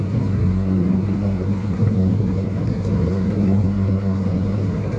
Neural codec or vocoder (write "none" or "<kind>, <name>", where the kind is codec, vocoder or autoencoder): codec, SNAC